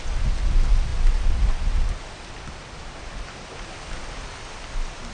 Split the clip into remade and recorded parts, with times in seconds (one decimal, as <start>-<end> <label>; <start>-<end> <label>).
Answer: 0.0-5.1 recorded